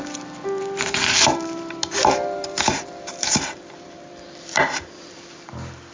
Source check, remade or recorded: remade